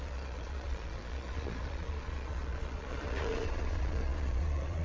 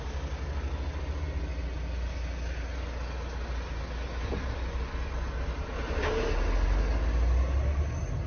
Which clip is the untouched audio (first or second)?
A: second